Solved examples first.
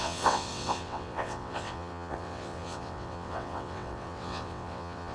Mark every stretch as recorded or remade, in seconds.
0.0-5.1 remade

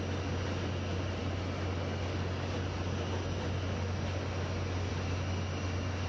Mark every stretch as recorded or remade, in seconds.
0.0-6.1 recorded

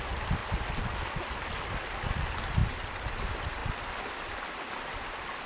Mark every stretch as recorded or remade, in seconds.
0.0-2.6 recorded; 2.6-3.2 remade; 3.2-5.5 recorded

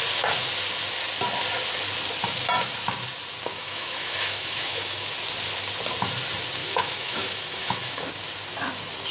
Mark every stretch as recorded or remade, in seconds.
0.0-3.5 recorded; 3.5-5.1 remade; 5.1-6.6 recorded; 6.6-8.1 remade; 8.1-9.1 recorded

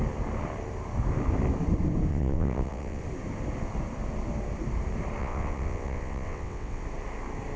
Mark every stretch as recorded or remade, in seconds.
0.0-2.1 recorded; 2.1-3.0 remade; 3.0-5.2 recorded; 5.2-6.8 remade; 6.8-7.6 recorded